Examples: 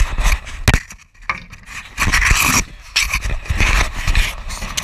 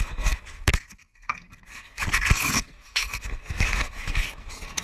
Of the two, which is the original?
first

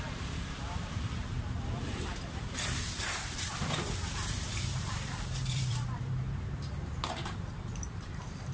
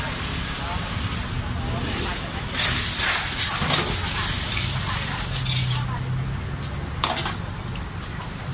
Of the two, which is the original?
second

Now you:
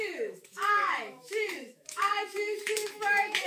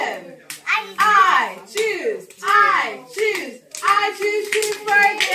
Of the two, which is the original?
second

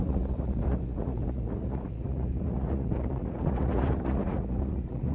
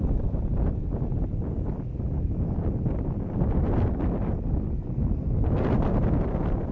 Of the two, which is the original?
second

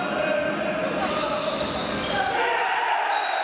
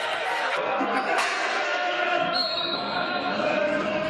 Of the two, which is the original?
first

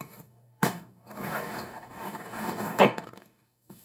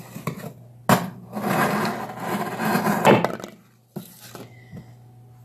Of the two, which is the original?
second